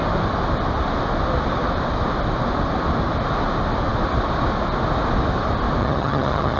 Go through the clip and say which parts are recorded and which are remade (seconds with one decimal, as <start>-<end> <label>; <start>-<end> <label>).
0.0-5.8 recorded; 5.8-6.6 remade